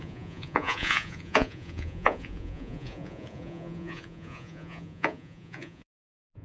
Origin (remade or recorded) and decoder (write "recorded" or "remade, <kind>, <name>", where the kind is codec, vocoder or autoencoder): remade, vocoder, Vocos